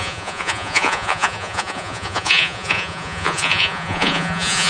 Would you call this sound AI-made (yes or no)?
yes